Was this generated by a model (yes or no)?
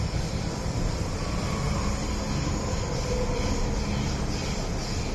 no